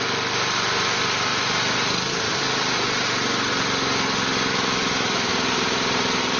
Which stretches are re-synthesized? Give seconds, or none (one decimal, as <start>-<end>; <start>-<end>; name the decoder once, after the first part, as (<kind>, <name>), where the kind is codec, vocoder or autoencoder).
4.5-5.3 (autoencoder, DAC-VAE)